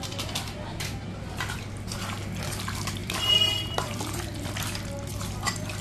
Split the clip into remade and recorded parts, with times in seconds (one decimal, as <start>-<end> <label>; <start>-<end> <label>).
0.0-3.0 recorded; 3.0-4.5 remade; 4.5-5.8 recorded